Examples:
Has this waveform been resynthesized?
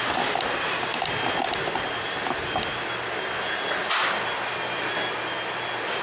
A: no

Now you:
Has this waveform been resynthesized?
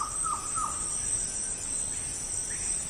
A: no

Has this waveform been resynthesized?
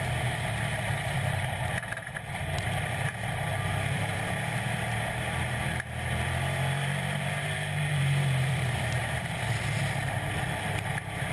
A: yes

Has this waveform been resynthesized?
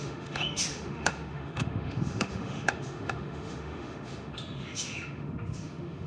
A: yes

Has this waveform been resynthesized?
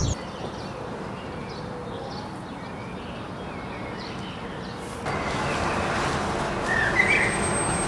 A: no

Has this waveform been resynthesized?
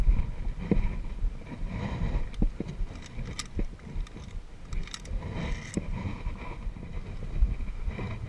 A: no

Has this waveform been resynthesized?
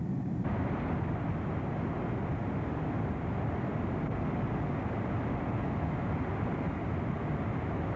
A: no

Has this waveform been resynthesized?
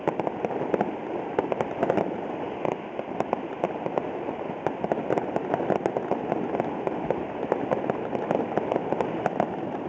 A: no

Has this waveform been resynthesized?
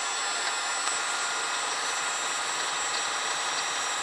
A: no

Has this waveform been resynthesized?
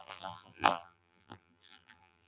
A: yes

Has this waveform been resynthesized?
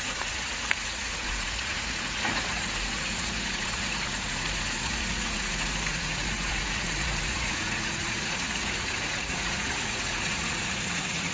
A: yes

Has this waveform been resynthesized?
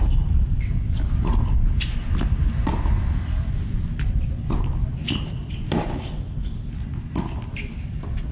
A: no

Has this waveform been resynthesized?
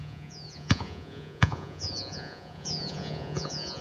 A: yes